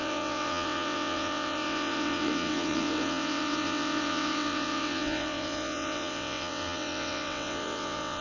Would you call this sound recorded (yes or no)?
no